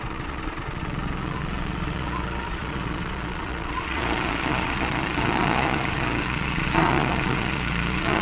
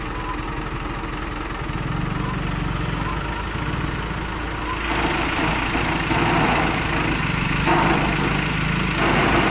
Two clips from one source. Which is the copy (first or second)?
first